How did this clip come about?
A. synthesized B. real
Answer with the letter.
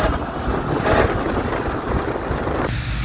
B